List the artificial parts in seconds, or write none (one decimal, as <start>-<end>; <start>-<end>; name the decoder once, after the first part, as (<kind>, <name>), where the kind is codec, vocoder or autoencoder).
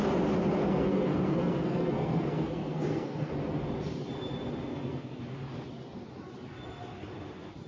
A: 0.6-3.3 (codec, SNAC); 4.7-5.2